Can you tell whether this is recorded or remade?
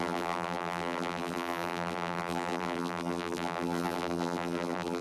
remade